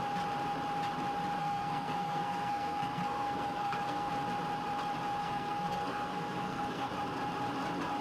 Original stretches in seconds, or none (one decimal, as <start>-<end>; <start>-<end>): 0.0-1.4; 4.1-5.2; 6.9-8.0

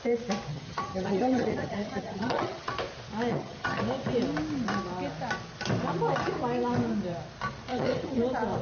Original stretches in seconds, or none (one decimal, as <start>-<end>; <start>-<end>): 0.0-0.5; 2.7-3.3; 3.8-7.7; 8.2-8.6